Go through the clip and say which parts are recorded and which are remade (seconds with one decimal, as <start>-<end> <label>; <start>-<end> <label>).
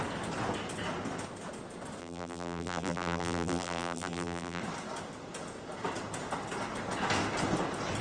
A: 0.0-2.0 recorded; 2.0-4.6 remade; 4.6-8.0 recorded